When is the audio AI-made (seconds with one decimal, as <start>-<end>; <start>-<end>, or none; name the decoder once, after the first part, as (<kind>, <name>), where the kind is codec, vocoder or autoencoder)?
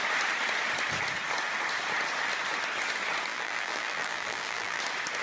3.3-4.8 (vocoder, BigVGAN v2)